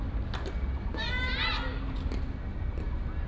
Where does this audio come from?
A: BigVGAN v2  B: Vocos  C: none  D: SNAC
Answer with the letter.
C